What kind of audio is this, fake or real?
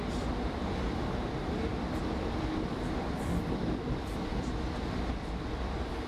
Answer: real